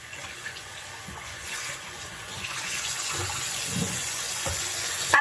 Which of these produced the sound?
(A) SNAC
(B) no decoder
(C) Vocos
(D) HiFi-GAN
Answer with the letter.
C